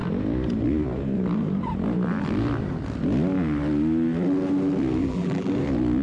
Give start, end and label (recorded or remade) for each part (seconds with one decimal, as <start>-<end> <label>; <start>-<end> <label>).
0.0-5.0 recorded; 5.0-5.5 remade; 5.5-6.0 recorded